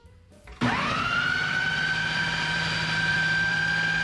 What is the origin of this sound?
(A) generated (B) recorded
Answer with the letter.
A